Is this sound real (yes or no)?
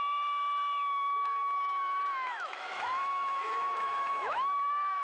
no